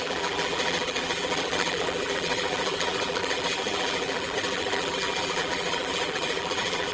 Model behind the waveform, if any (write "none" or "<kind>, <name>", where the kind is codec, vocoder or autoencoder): vocoder, BigVGAN v2